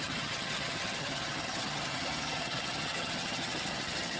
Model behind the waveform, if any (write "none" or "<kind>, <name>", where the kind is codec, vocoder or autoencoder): vocoder, HiFi-GAN